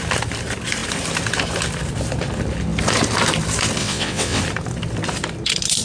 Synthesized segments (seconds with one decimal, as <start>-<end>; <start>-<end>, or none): 3.8-4.4